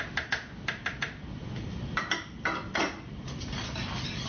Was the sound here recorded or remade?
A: remade